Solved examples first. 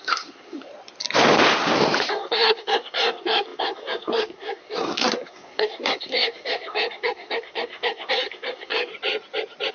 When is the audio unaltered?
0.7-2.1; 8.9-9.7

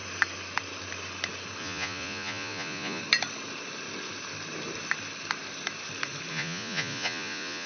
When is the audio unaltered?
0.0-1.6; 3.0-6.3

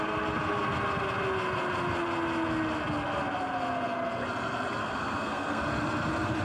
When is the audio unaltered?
0.0-4.8; 5.6-6.4

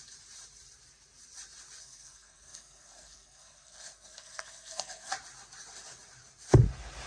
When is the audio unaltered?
0.0-1.8; 5.1-7.1